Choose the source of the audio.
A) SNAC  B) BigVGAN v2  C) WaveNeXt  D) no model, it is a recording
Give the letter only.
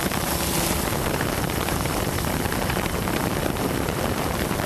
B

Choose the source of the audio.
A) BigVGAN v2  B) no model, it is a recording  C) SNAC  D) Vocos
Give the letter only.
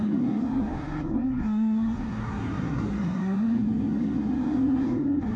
C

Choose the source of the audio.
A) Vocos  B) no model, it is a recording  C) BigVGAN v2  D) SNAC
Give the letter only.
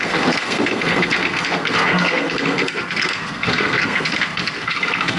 D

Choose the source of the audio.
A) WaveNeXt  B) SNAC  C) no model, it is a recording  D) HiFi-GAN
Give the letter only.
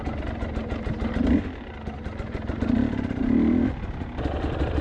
C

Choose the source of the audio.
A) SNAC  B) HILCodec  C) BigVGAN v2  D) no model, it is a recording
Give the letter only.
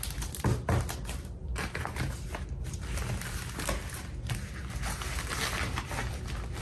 D